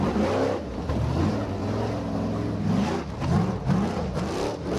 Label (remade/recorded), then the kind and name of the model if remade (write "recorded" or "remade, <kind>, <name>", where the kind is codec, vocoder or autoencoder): recorded